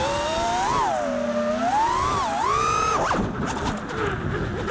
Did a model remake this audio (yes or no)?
no